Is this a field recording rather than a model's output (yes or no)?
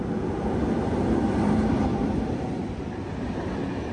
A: yes